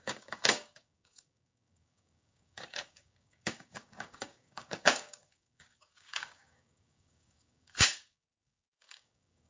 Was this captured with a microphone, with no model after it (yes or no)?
no